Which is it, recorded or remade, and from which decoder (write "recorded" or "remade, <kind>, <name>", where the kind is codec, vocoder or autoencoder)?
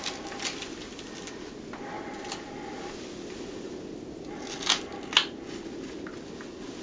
recorded